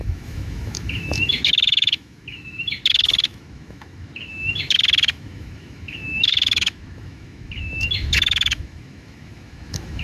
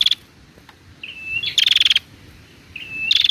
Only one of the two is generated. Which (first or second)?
first